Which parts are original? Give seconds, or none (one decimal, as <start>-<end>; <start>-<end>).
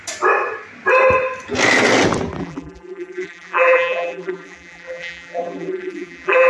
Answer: 0.0-2.4